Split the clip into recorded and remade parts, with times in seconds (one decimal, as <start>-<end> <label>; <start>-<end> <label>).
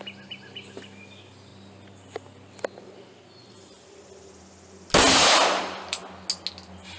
0.0-1.5 remade; 1.5-5.6 recorded; 5.6-6.0 remade; 6.0-7.0 recorded